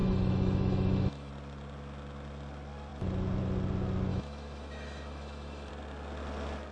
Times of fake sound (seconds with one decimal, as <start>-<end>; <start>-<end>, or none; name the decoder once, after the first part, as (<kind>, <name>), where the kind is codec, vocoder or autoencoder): 0.0-1.3 (autoencoder, DAC-VAE); 4.1-5.7